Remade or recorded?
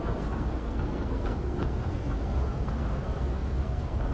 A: remade